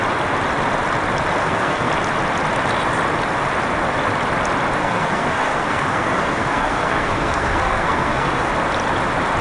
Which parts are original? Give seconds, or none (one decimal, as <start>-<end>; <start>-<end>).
0.0-1.4; 1.9-4.8; 8.5-9.4